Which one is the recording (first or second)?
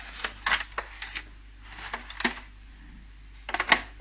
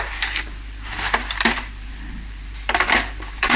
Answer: first